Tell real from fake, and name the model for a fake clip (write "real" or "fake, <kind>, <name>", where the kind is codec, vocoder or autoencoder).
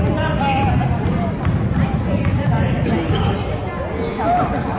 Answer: real